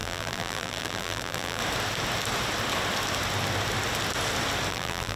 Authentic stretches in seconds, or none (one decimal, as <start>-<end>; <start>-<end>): 1.6-4.7

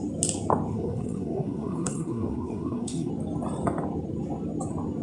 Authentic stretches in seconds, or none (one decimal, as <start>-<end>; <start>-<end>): 0.0-0.7; 3.1-5.0